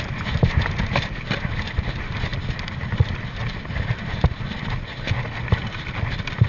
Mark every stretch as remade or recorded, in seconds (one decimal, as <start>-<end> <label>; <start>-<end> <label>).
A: 0.0-2.3 recorded; 2.3-3.5 remade; 3.5-6.5 recorded